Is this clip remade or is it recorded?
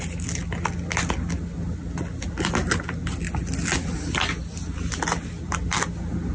recorded